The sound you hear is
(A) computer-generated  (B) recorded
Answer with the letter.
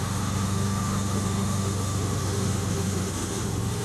A